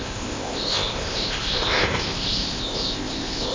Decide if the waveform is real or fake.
fake